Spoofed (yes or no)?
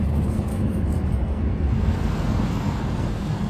yes